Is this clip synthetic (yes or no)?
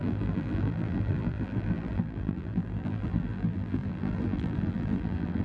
yes